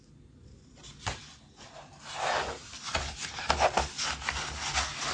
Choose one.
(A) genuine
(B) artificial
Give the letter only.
A